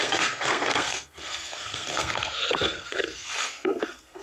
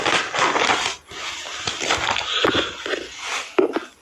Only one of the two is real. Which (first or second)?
second